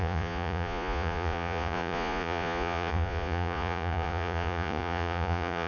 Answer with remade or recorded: remade